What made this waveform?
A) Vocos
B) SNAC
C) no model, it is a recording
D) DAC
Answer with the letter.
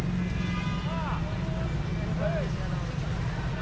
C